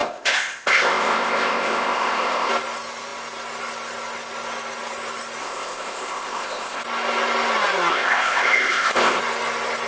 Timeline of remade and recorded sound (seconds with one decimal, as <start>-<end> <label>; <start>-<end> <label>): 0.0-2.5 remade; 2.5-5.4 recorded; 5.4-6.8 remade; 6.8-7.9 recorded; 7.9-9.2 remade; 9.2-9.9 recorded